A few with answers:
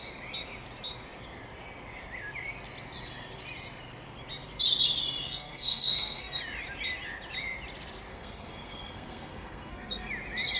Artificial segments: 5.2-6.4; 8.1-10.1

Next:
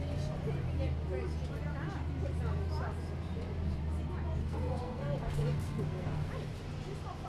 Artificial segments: 4.4-6.3

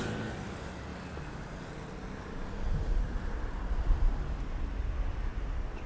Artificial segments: none

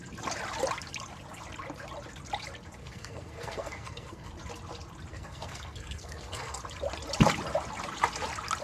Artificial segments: 2.8-4.3; 5.1-6.6

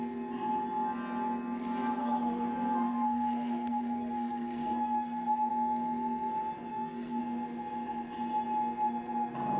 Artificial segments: 2.0-5.5; 6.7-7.2

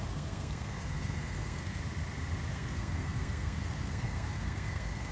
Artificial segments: 0.0-1.8; 2.5-5.1